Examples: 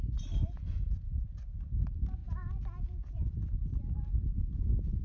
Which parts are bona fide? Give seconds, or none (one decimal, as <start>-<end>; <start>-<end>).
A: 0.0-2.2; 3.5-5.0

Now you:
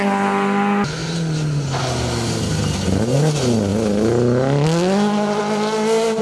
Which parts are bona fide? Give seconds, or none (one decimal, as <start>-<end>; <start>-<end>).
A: 0.0-6.2

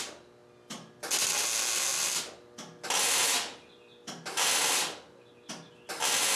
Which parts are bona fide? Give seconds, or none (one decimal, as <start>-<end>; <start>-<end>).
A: 0.0-6.4

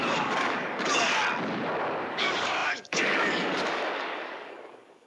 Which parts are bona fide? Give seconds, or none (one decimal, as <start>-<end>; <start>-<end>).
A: 1.2-2.1

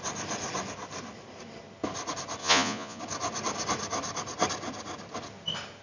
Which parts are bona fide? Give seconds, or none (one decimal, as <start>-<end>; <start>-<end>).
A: 0.0-2.4; 3.0-5.8

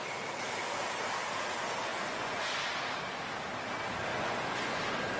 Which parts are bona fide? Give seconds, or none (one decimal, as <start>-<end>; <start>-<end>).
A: 0.0-1.9; 2.6-4.1; 4.8-5.2

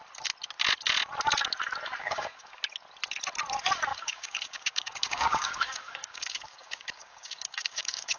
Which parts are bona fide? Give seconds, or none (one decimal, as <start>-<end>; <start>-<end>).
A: 0.0-2.0; 2.6-3.9